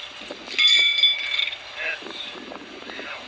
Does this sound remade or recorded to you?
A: recorded